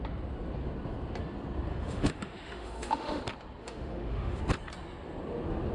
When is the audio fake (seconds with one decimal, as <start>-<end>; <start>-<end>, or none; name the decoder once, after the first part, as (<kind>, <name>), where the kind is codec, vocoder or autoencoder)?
1.7-3.2 (autoencoder, DAC-VAE); 3.6-4.4